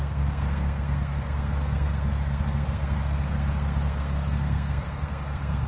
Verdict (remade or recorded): remade